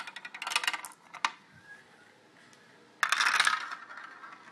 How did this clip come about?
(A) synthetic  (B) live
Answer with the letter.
B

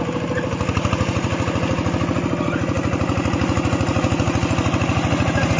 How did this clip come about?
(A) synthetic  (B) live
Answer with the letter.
B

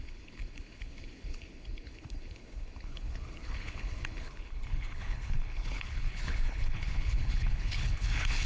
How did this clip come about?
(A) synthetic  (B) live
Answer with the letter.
A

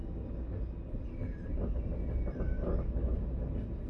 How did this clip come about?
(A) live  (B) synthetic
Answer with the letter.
A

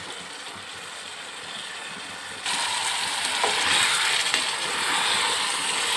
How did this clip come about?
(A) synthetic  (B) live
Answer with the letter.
B